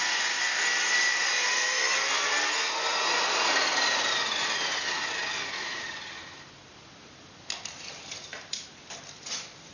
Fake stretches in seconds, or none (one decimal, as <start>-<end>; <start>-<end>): 0.0-1.3; 2.9-4.6; 8.3-9.7